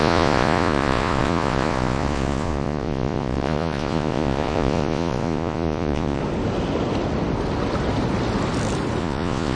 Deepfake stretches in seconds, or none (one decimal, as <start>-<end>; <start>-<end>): 0.0-6.2; 9.0-9.5